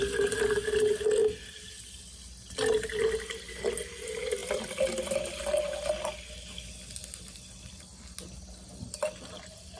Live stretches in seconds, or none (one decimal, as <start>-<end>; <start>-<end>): 0.0-9.8